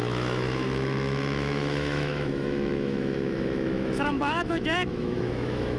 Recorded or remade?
remade